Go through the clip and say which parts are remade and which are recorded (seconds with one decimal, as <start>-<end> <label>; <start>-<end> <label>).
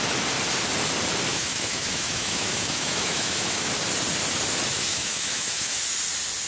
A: 0.0-1.3 recorded; 1.3-3.7 remade; 3.7-4.7 recorded; 4.7-5.8 remade; 5.8-6.5 recorded